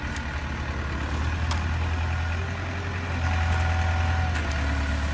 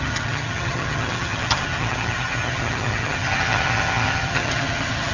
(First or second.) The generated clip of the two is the second